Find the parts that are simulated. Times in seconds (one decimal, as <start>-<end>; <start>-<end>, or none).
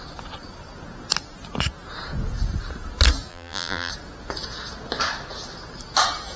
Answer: 3.3-3.9